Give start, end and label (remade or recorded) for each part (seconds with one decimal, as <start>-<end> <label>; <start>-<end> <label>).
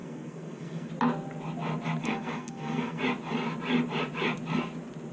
0.0-0.9 remade; 0.9-2.0 recorded; 2.0-3.0 remade; 3.0-5.1 recorded